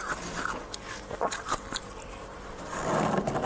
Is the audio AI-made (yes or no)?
no